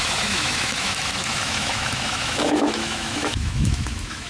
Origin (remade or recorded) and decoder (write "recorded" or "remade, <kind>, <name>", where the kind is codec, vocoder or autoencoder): remade, autoencoder, DAC-VAE